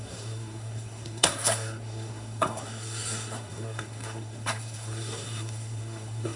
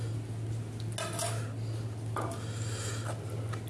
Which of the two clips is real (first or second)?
second